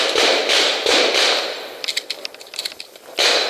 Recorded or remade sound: recorded